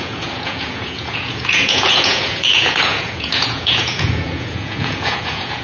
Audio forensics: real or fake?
fake